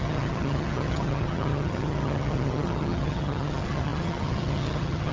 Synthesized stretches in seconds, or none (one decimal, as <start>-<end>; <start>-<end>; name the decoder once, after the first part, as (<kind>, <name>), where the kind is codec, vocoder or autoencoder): 0.0-5.1 (vocoder, HiFi-GAN)